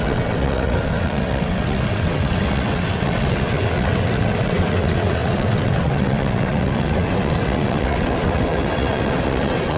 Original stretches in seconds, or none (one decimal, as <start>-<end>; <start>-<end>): none